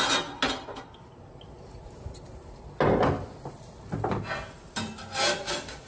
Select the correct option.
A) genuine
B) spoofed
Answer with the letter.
A